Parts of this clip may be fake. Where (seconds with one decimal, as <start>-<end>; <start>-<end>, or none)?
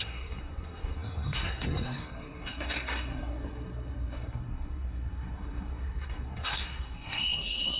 0.0-7.8